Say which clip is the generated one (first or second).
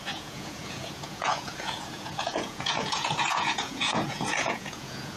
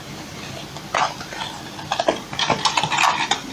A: first